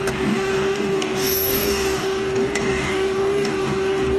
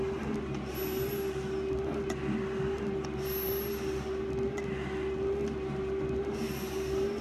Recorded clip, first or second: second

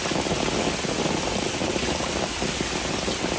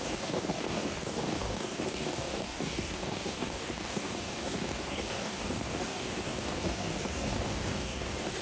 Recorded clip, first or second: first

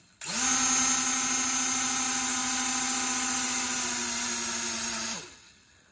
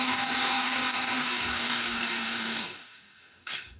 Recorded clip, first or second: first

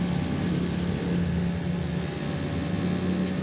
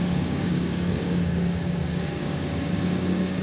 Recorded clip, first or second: first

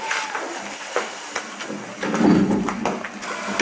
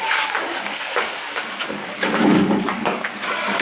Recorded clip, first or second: first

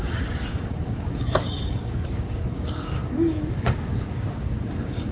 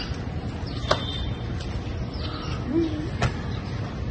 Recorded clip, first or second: second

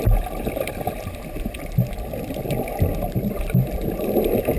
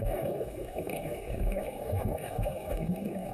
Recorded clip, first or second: first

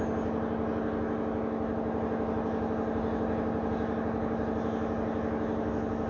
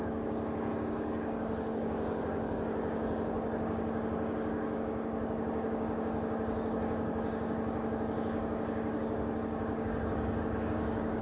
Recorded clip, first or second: first